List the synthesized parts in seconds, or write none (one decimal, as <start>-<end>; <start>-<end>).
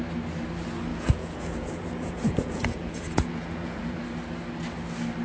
0.9-4.0